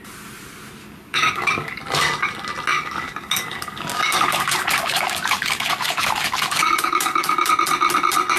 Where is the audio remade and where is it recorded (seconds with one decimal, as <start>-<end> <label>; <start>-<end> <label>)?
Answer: 0.0-0.8 recorded; 0.8-1.8 remade; 1.8-2.7 recorded; 2.7-7.5 remade; 7.5-8.4 recorded